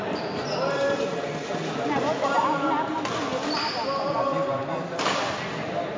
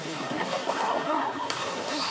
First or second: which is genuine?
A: first